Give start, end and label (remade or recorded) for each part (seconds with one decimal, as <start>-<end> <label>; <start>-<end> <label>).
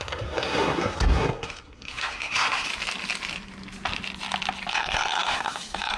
0.0-2.7 remade; 2.7-4.7 recorded; 4.7-6.0 remade